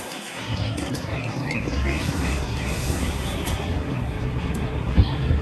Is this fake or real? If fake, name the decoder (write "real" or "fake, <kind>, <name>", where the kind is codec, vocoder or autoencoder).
fake, codec, SNAC